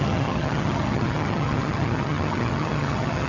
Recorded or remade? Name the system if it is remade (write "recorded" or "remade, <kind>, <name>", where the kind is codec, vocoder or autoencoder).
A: remade, vocoder, HiFi-GAN